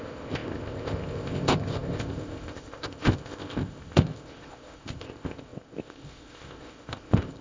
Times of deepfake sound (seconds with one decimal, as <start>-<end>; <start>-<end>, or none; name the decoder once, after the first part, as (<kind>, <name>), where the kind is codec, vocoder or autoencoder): 0.0-7.4 (codec, ZipCodec)